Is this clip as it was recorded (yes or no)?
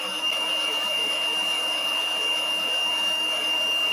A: no